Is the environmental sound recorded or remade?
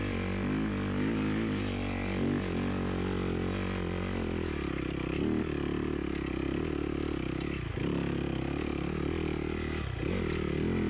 recorded